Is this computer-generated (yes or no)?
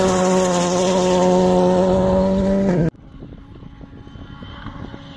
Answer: no